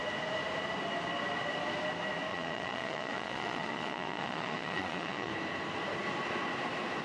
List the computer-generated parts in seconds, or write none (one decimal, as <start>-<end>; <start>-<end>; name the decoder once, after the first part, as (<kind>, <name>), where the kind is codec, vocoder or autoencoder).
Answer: 2.3-5.3 (vocoder, Vocos)